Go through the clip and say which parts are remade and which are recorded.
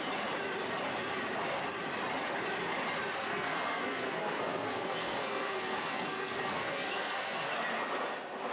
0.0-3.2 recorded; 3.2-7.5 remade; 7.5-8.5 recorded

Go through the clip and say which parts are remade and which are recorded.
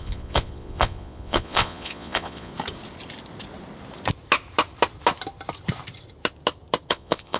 0.0-2.5 remade; 2.5-6.9 recorded; 6.9-7.4 remade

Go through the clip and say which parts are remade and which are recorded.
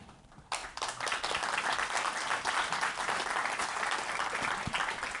0.0-5.2 recorded